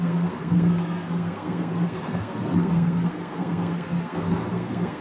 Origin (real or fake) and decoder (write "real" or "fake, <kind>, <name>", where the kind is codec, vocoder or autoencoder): fake, codec, SNAC